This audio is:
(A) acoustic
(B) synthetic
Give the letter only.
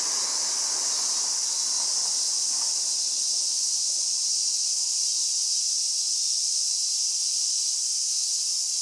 A